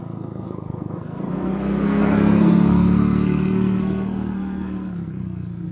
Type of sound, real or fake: fake